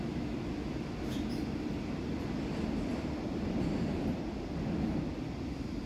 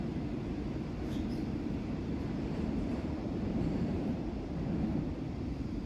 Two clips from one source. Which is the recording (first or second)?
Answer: first